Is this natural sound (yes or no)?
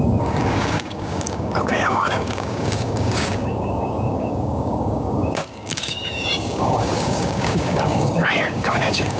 no